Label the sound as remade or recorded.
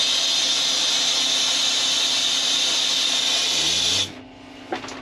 recorded